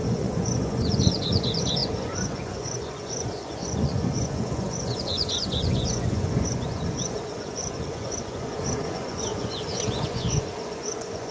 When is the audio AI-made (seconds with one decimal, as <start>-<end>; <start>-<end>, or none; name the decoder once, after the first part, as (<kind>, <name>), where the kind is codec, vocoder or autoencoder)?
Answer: 0.0-11.3 (vocoder, Vocos)